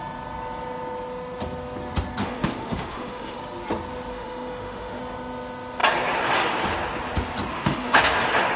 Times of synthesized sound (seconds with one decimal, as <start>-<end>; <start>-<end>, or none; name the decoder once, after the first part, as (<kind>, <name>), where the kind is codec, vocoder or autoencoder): 2.2-3.4 (autoencoder, DAC-VAE); 4.1-5.0; 7.5-8.0